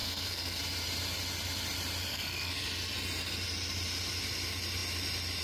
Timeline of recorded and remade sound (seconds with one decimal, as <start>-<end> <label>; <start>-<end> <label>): 0.0-0.6 remade; 0.6-2.1 recorded; 2.1-2.6 remade; 2.6-5.4 recorded